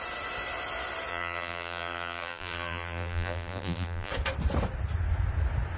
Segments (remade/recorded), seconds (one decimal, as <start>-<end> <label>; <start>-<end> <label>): 0.0-1.1 recorded; 1.1-4.1 remade; 4.1-5.8 recorded